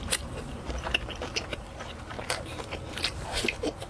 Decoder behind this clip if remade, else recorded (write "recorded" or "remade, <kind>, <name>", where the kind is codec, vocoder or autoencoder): remade, vocoder, BigVGAN v2